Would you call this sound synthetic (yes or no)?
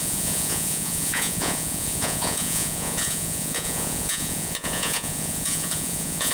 yes